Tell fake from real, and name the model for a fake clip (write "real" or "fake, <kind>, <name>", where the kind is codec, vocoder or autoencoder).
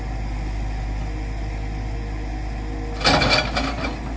real